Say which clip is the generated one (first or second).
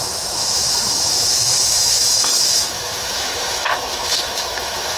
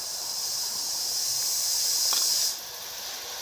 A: first